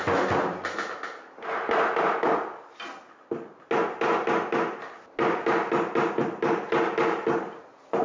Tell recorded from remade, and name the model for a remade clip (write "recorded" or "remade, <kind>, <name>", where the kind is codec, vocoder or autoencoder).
recorded